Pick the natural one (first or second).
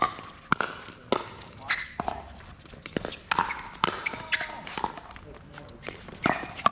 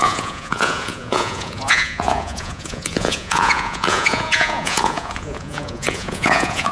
first